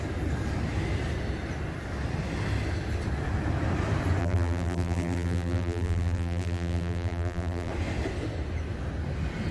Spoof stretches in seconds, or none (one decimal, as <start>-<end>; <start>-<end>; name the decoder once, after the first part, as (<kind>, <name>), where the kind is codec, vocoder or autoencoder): 4.2-7.7 (vocoder, BigVGAN v2)